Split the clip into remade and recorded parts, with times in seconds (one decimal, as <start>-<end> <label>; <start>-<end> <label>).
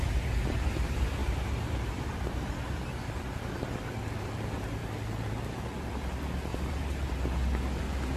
0.0-1.2 recorded; 1.2-2.5 remade; 2.5-6.5 recorded; 6.5-7.2 remade; 7.2-8.2 recorded